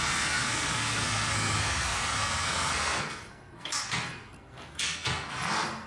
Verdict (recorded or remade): remade